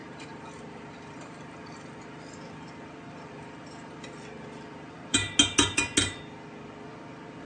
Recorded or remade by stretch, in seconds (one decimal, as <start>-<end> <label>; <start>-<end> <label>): 0.0-5.2 remade; 5.2-7.4 recorded